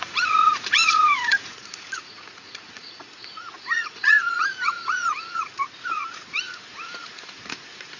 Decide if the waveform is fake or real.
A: fake